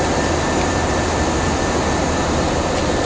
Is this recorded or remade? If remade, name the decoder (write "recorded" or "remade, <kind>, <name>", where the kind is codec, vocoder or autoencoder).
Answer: remade, vocoder, BigVGAN v2